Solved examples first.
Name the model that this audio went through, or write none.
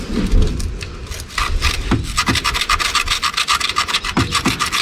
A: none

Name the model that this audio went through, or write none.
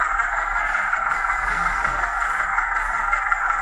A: codec, SNAC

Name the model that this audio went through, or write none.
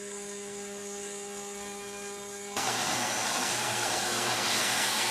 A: codec, SNAC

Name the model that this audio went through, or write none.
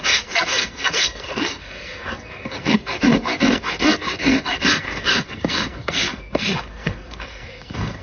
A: codec, SNAC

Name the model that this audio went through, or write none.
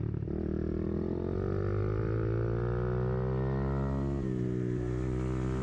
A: none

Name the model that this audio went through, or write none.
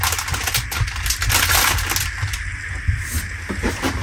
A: none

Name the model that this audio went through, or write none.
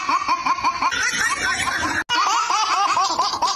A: none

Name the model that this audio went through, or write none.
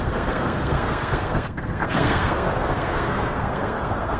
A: codec, SNAC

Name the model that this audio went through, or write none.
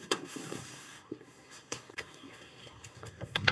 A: codec, SNAC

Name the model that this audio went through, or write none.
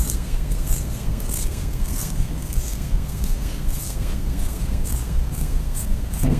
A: codec, SNAC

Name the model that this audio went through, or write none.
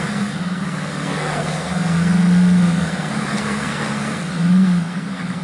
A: codec, SNAC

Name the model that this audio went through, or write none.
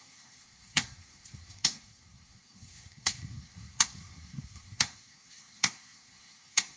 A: codec, SNAC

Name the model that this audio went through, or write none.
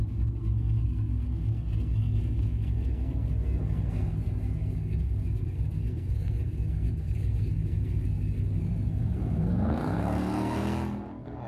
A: codec, SNAC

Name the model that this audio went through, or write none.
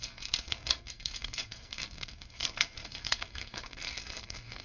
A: codec, SNAC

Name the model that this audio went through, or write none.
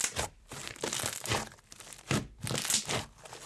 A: none